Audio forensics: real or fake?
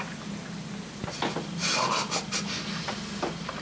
real